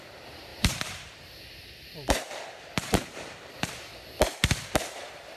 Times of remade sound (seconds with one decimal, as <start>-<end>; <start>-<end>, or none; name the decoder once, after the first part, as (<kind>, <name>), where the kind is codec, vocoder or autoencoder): 0.5-3.7 (vocoder, BigVGAN v2)